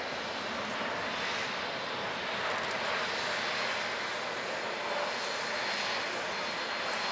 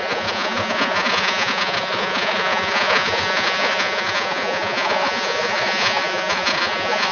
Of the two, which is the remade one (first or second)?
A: second